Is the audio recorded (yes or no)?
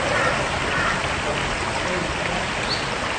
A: yes